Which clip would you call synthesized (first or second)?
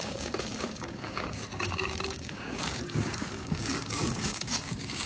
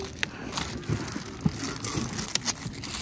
first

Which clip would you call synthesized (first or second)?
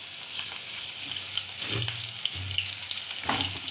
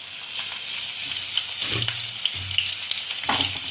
first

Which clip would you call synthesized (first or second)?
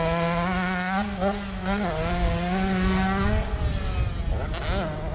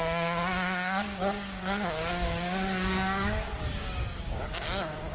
second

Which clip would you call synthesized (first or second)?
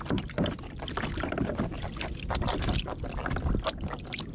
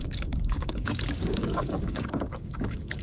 second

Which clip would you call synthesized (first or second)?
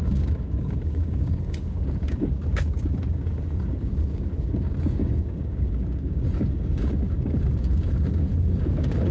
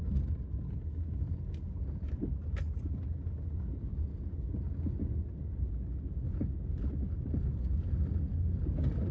first